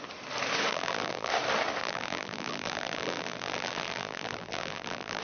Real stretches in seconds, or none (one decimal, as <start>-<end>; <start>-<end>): 0.0-0.7; 1.3-1.8